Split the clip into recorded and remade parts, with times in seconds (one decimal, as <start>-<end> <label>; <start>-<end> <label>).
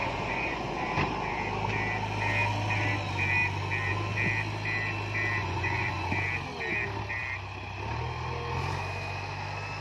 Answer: 0.0-0.9 remade; 0.9-5.4 recorded; 5.4-6.1 remade; 6.1-9.8 recorded